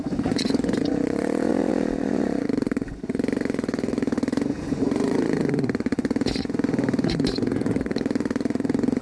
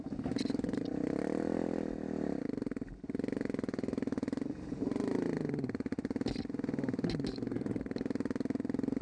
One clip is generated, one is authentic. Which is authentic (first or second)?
second